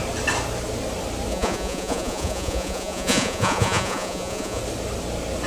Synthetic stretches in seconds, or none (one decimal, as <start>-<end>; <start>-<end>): 1.3-4.6